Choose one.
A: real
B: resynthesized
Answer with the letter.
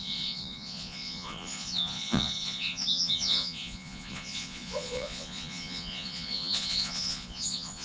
B